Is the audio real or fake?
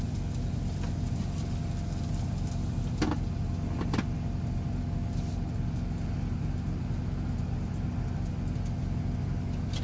real